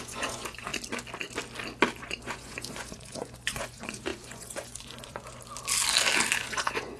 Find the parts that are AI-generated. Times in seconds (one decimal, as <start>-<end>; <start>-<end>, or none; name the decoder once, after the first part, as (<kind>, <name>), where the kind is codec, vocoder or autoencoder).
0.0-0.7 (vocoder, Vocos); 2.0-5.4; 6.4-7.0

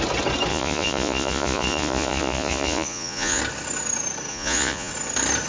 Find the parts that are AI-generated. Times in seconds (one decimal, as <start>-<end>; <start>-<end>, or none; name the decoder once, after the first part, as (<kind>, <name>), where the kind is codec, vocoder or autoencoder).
0.5-3.4 (vocoder, Vocos); 4.3-4.9

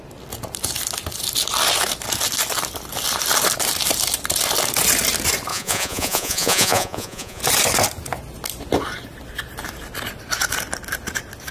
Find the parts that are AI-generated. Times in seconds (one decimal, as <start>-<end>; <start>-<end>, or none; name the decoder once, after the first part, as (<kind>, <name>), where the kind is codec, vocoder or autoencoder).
5.5-7.4 (vocoder, Vocos)

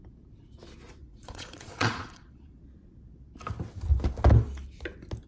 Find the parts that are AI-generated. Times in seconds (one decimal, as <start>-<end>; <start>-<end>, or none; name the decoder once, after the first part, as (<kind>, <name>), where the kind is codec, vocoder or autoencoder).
1.0-2.6 (vocoder, Vocos)